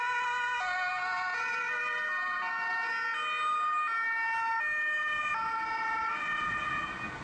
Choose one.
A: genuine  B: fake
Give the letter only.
A